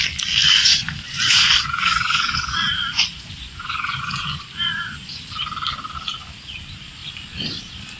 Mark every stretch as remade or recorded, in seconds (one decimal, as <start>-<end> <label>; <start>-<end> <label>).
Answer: 0.0-0.4 recorded; 0.4-5.2 remade; 5.2-7.0 recorded; 7.0-7.6 remade; 7.6-8.0 recorded